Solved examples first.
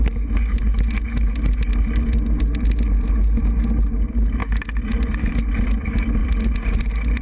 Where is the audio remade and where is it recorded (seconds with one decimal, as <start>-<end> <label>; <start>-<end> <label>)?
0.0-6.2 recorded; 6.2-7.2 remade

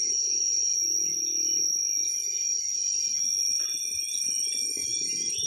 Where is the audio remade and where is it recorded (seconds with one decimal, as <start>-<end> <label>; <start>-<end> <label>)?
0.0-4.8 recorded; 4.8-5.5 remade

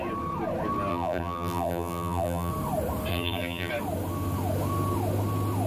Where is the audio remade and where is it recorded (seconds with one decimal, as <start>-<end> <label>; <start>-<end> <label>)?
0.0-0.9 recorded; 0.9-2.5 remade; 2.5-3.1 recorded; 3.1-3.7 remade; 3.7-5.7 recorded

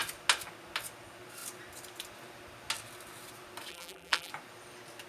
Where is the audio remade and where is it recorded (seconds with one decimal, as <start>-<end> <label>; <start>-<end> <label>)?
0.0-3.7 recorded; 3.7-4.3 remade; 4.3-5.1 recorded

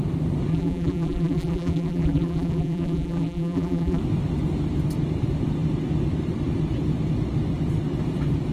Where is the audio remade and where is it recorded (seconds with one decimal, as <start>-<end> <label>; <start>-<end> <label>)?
0.0-0.5 recorded; 0.5-4.0 remade; 4.0-8.5 recorded

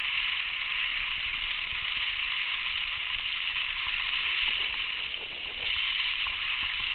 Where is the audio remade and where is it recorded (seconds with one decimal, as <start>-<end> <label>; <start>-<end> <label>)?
0.0-0.9 recorded; 0.9-1.7 remade; 1.7-2.5 recorded; 2.5-6.9 remade

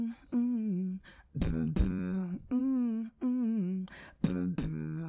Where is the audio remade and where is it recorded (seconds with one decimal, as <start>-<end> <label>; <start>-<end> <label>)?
0.0-1.1 recorded; 1.1-2.6 remade; 2.6-5.1 recorded

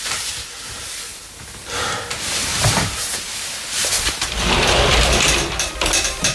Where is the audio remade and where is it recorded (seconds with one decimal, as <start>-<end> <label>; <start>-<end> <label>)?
0.0-1.1 recorded; 1.1-1.9 remade; 1.9-2.5 recorded; 2.5-3.9 remade; 3.9-6.3 recorded